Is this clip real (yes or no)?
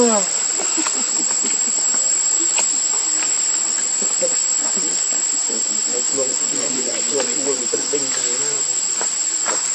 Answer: yes